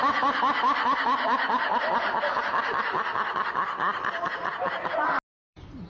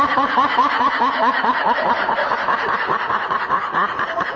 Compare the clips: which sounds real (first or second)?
first